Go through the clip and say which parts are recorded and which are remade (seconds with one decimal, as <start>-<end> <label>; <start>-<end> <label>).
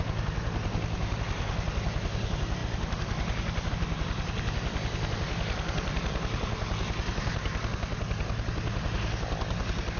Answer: 0.0-10.0 recorded